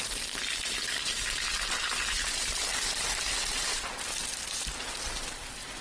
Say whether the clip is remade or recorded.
recorded